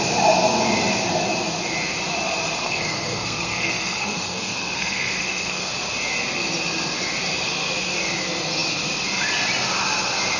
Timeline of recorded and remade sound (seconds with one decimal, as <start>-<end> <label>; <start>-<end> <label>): 0.0-2.6 recorded; 2.6-5.7 remade; 5.7-10.4 recorded